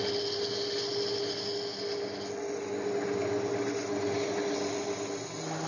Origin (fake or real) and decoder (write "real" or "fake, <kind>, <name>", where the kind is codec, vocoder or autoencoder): real